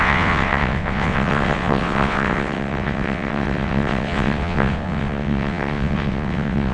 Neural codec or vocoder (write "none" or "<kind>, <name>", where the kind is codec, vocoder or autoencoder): vocoder, WaveNeXt